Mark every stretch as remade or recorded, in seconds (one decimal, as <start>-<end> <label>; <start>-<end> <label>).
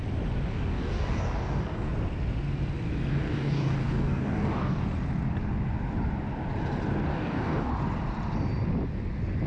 0.0-0.5 recorded; 0.5-1.9 remade; 1.9-3.1 recorded; 3.1-4.8 remade; 4.8-7.1 recorded; 7.1-7.7 remade; 7.7-9.5 recorded